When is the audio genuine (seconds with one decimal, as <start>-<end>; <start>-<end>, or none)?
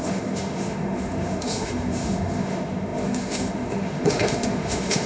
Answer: none